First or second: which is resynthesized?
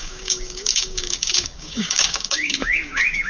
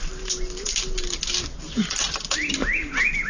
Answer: first